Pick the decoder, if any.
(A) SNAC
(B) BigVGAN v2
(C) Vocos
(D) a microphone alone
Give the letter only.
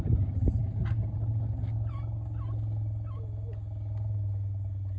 D